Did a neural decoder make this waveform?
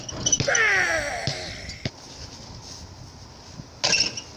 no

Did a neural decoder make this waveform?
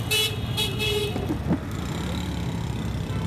no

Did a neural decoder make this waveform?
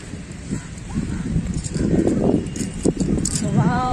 yes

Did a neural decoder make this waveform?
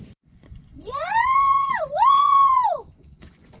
yes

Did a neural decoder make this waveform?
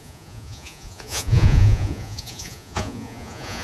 yes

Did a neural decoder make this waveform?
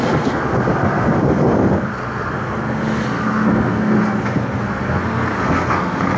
yes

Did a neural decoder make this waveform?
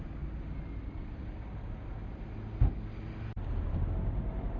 no